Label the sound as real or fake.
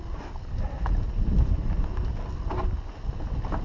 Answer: real